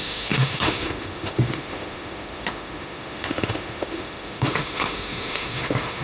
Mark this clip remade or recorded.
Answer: remade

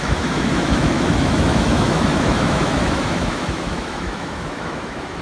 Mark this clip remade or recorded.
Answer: remade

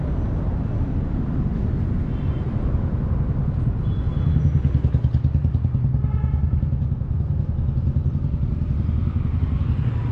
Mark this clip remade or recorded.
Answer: recorded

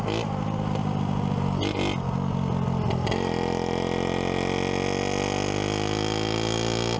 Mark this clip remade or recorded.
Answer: recorded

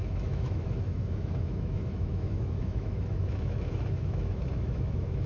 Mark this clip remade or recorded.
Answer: remade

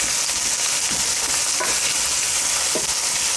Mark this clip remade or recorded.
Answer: recorded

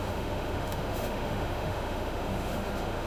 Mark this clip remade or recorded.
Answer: remade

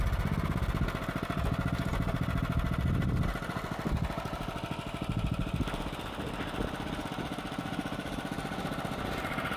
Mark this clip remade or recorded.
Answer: recorded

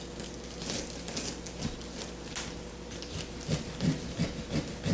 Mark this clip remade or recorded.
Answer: recorded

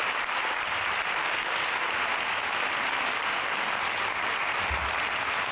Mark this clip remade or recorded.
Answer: recorded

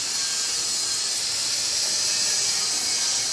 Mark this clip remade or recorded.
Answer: recorded